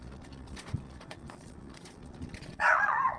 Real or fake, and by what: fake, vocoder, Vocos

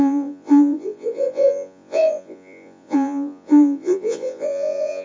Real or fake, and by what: fake, vocoder, Vocos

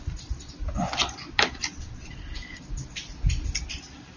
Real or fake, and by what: real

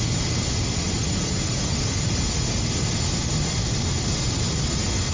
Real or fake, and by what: real